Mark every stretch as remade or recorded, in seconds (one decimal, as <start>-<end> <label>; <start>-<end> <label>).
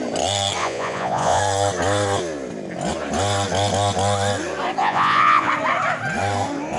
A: 0.0-0.6 recorded; 0.6-1.4 remade; 1.4-4.8 recorded; 4.8-5.5 remade; 5.5-6.8 recorded